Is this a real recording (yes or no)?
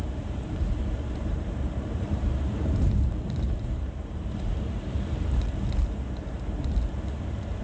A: no